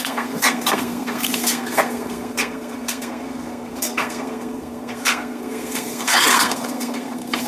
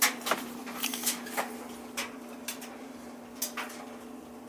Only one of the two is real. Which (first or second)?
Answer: second